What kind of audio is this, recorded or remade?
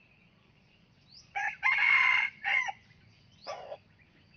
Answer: remade